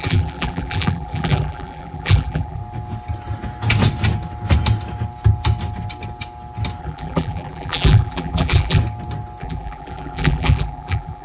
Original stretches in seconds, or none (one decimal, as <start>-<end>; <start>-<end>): 2.6-6.8; 8.8-9.4